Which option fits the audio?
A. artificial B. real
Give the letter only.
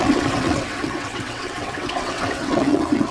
A